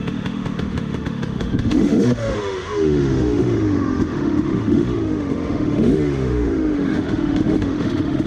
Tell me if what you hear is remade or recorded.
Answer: remade